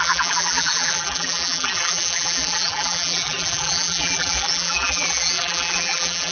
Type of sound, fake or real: fake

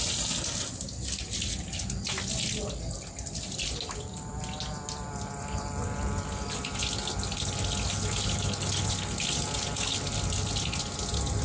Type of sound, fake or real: real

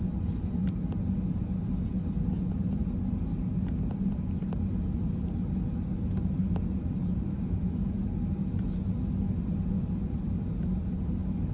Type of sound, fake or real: real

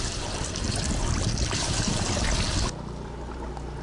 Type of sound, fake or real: real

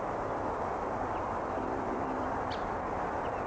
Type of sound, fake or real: real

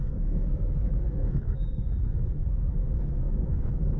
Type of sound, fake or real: fake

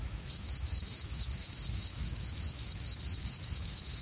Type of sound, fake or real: fake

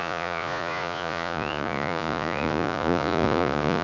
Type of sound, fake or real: fake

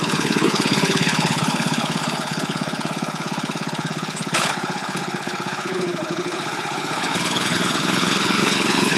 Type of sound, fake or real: fake